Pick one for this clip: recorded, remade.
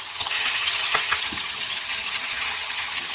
remade